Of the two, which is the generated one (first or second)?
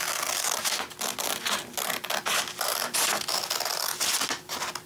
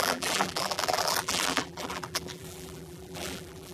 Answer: second